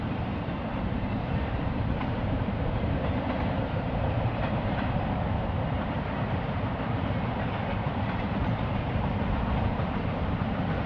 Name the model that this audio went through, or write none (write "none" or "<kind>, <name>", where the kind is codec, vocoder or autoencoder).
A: vocoder, BigVGAN v2